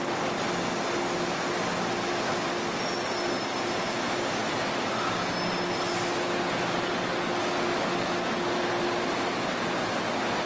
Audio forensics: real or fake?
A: real